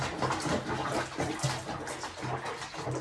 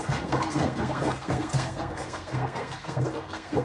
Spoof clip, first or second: second